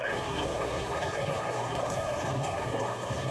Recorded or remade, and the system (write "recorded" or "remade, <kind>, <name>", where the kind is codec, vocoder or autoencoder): remade, codec, SNAC